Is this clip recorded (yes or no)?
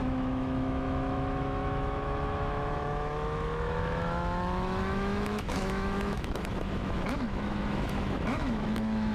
no